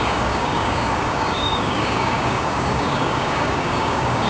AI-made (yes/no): yes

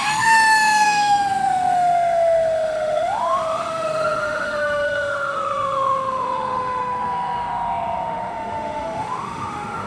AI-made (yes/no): yes